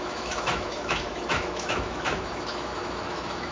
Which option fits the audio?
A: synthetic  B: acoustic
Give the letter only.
A